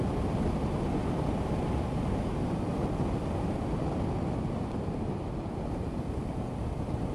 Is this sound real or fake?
real